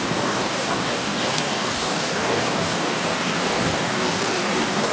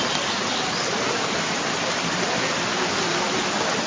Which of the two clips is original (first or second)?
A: second